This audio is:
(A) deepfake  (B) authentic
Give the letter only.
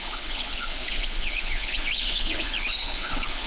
A